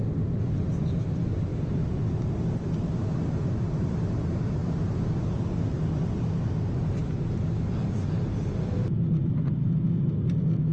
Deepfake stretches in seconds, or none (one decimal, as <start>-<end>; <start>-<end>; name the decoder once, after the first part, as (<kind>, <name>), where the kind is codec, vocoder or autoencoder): none